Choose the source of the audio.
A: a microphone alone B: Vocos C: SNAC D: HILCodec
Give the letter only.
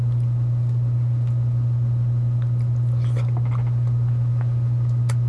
A